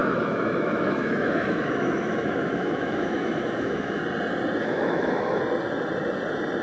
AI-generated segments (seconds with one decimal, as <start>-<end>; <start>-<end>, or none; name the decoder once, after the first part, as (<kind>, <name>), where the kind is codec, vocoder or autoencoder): 0.0-4.0 (autoencoder, DAC-VAE); 4.6-5.4